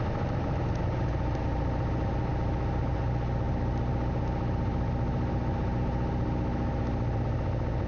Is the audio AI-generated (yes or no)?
no